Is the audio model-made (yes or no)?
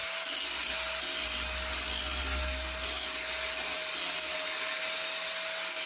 no